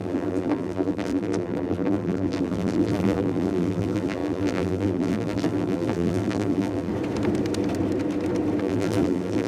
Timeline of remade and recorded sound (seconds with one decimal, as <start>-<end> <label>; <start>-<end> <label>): 0.0-6.9 remade; 6.9-8.6 recorded; 8.6-9.5 remade